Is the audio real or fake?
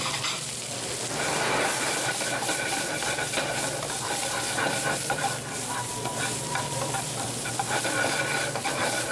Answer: fake